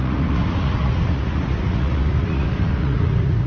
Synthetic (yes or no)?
yes